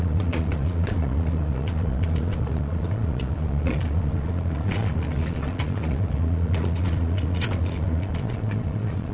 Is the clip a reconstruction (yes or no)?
yes